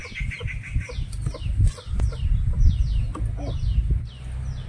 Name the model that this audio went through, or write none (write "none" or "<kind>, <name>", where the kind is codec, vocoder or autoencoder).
none